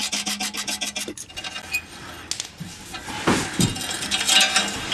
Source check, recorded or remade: recorded